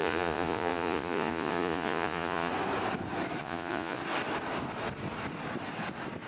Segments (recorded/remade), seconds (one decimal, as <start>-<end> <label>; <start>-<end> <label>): 0.0-2.5 remade; 2.5-3.4 recorded; 3.4-4.0 remade; 4.0-6.3 recorded

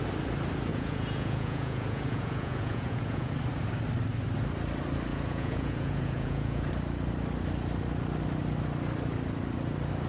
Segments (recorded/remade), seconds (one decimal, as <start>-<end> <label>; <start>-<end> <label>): 0.0-0.7 recorded; 0.7-3.3 remade; 3.3-5.1 recorded; 5.1-6.7 remade; 6.7-10.1 recorded

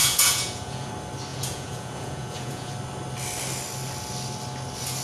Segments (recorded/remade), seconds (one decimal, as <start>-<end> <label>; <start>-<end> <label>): 0.0-0.9 remade; 0.9-1.3 recorded; 1.3-2.7 remade; 2.7-5.0 recorded

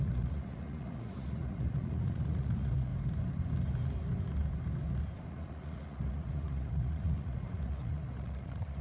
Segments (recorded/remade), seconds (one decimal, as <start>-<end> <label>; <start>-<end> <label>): 0.0-2.9 remade; 2.9-5.3 recorded; 5.3-8.8 remade

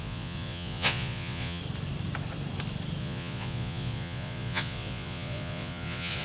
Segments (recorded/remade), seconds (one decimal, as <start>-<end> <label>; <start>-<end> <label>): 0.0-1.6 remade; 1.6-3.0 recorded; 3.0-6.2 remade

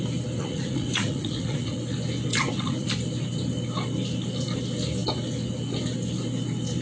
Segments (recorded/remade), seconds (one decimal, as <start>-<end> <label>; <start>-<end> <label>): 0.0-0.4 recorded; 0.4-1.8 remade; 1.8-2.3 recorded; 2.3-2.9 remade; 2.9-6.8 recorded

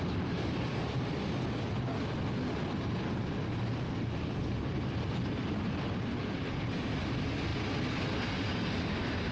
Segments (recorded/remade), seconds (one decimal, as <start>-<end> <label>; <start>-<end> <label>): 0.0-9.3 recorded